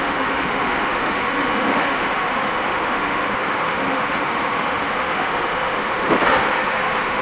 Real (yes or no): no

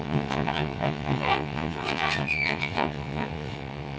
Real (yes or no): no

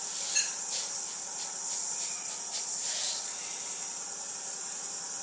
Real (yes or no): yes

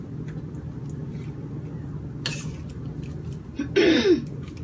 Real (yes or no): yes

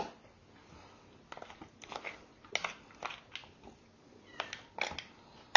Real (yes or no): yes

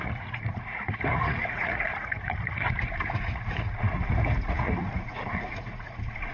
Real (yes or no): no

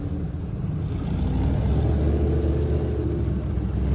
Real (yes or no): yes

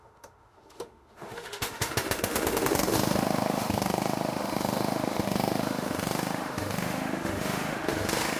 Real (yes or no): no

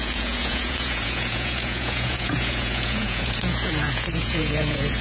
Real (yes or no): no